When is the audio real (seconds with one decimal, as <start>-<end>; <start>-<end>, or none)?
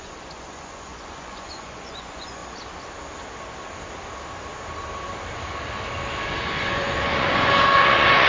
2.4-6.4